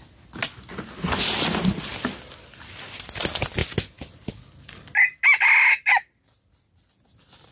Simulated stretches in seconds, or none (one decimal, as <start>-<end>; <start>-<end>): none